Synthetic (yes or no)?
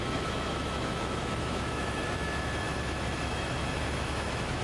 yes